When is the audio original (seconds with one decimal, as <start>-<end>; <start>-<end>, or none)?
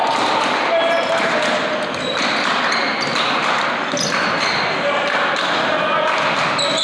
0.0-6.8